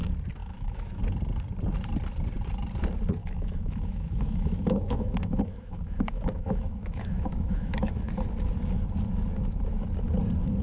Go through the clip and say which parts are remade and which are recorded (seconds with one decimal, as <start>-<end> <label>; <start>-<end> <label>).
0.0-0.4 recorded; 0.4-1.0 remade; 1.0-3.2 recorded; 3.2-8.1 remade; 8.1-10.6 recorded

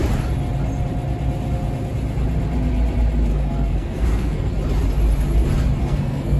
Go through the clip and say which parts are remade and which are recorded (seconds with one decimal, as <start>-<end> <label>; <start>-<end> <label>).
0.0-3.3 recorded; 3.3-4.5 remade; 4.5-5.8 recorded; 5.8-6.4 remade